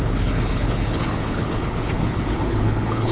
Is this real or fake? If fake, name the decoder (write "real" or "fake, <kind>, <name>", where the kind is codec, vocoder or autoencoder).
fake, codec, HILCodec